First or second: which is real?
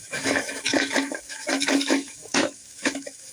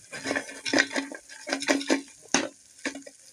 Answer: second